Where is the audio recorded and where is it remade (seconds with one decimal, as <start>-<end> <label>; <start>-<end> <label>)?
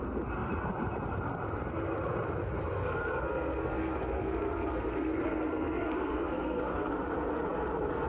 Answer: 0.0-2.8 recorded; 2.8-6.9 remade; 6.9-8.1 recorded